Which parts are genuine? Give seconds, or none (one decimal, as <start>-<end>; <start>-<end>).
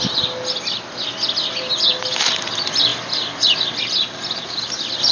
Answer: 0.0-5.1